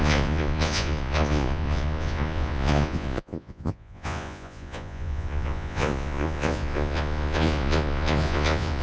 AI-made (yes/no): yes